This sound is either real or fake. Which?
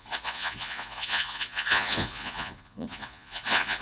fake